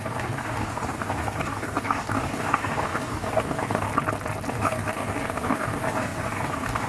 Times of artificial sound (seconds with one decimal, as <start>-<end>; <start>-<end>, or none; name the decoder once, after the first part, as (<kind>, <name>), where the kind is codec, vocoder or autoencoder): 0.0-3.9 (codec, DAC); 4.5-6.9